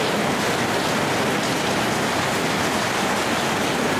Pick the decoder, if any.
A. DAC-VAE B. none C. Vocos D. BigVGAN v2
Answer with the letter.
B